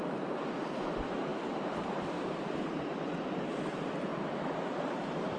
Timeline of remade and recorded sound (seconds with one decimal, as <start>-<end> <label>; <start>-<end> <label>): 0.0-4.1 remade; 4.1-4.9 recorded; 4.9-5.4 remade